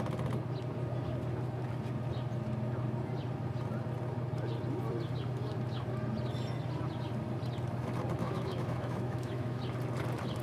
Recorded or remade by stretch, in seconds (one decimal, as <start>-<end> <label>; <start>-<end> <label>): 0.0-8.2 recorded; 8.2-9.6 remade; 9.6-10.4 recorded